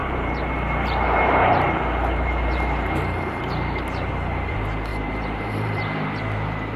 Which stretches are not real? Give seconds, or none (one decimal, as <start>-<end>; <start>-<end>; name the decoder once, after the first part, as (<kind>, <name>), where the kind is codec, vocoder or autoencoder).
0.0-4.1 (vocoder, BigVGAN v2); 4.9-6.2